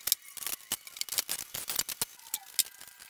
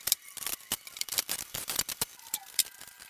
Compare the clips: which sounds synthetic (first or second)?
second